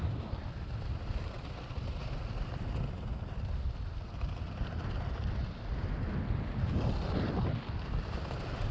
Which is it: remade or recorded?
recorded